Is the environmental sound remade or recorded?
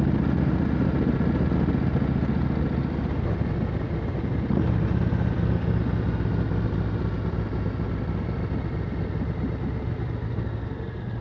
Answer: recorded